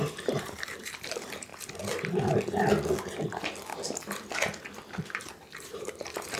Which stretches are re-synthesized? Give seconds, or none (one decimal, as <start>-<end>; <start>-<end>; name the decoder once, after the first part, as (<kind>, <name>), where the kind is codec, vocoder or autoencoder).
0.0-1.5 (vocoder, BigVGAN v2); 5.2-6.4